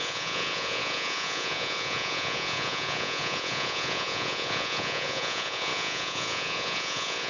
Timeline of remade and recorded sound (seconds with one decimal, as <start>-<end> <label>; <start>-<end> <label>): 0.0-7.3 remade